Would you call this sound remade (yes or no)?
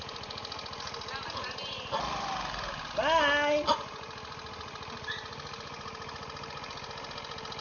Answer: no